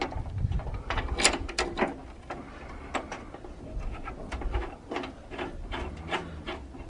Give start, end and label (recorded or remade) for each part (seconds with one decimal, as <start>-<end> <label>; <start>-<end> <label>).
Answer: 0.0-6.9 recorded

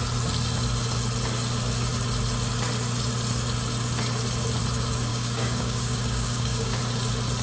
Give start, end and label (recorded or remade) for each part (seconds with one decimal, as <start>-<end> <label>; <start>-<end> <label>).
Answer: 0.0-5.1 recorded; 5.1-6.8 remade; 6.8-7.4 recorded